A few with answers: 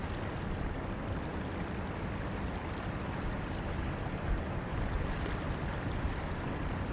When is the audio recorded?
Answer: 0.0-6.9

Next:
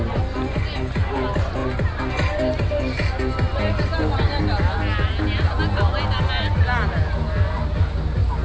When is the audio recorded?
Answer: 0.0-8.4